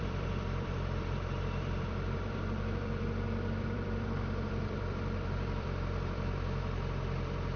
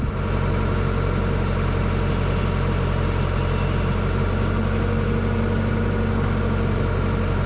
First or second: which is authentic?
second